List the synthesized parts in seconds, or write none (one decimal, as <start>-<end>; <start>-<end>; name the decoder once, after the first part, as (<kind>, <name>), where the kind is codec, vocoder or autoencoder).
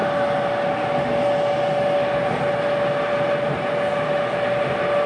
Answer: none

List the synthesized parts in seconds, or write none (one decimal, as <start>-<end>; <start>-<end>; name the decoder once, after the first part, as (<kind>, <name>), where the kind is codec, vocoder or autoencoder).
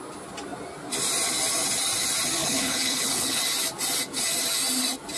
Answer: 2.4-3.4 (codec, HILCodec)